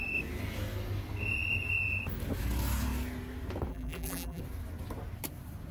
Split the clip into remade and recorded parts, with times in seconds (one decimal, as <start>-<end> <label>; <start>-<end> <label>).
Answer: 0.0-3.7 recorded; 3.7-4.4 remade; 4.4-5.7 recorded